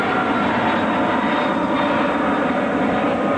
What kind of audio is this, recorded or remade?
recorded